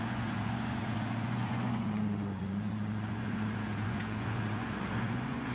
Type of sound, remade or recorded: remade